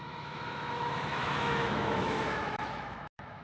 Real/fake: fake